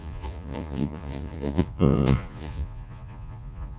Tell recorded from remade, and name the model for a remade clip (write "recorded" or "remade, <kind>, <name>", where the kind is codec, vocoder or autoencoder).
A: remade, vocoder, Vocos